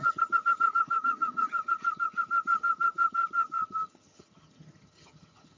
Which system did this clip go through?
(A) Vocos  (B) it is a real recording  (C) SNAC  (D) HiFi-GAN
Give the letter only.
D